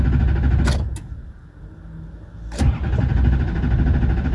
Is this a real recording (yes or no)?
yes